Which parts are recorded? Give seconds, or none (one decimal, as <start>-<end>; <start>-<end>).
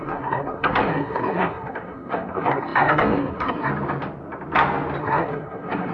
3.7-5.0